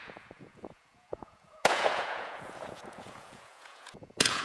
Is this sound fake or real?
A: fake